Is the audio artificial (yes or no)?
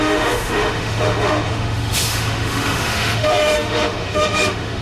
yes